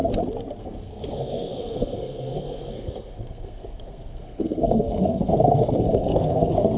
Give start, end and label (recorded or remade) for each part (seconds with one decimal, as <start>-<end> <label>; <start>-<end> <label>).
0.0-0.6 recorded; 0.6-6.8 remade